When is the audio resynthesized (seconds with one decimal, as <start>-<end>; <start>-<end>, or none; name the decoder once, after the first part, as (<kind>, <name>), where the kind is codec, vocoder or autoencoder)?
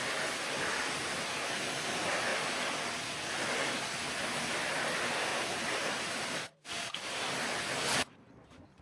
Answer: 5.3-7.3 (vocoder, BigVGAN v2)